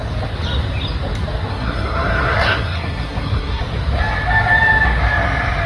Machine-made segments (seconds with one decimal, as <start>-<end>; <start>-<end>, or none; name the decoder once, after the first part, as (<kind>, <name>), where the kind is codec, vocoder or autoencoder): 1.5-3.6 (codec, SNAC)